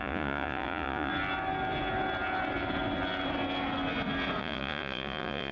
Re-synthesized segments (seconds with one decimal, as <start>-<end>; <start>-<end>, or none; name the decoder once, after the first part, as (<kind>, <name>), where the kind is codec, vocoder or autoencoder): 0.0-1.1 (vocoder, Vocos); 4.4-5.5